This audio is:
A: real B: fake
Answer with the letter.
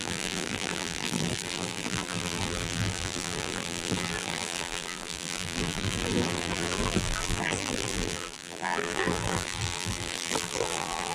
B